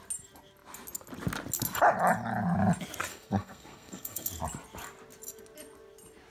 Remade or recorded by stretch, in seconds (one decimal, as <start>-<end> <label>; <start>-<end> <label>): 0.0-3.1 recorded; 3.1-4.3 remade; 4.3-6.3 recorded